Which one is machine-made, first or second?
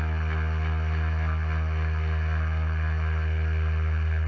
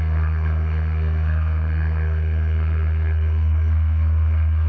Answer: second